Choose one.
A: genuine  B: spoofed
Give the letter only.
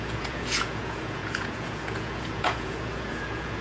B